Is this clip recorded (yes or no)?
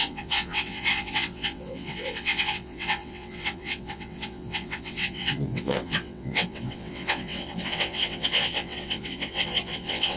no